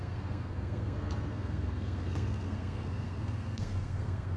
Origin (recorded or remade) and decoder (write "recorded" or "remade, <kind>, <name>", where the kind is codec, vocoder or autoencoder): remade, codec, SNAC